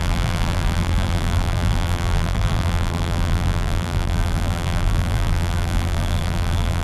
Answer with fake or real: fake